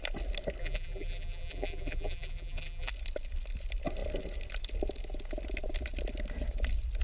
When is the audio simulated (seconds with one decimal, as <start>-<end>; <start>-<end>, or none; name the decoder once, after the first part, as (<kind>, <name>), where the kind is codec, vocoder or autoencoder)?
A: 0.6-2.9 (vocoder, BigVGAN v2)